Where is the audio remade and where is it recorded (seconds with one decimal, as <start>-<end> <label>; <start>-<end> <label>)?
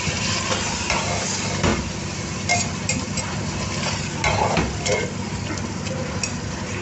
0.0-1.7 recorded; 1.7-2.3 remade; 2.3-6.8 recorded